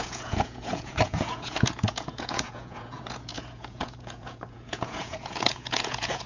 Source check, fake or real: fake